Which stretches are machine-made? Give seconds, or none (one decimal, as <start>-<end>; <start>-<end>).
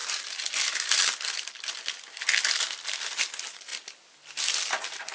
none